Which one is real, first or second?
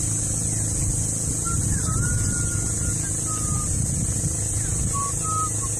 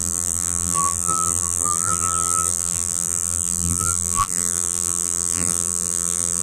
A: first